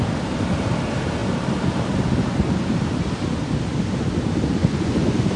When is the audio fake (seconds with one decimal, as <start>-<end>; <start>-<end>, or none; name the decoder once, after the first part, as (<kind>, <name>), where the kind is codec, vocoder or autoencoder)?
4.6-5.4 (vocoder, Vocos)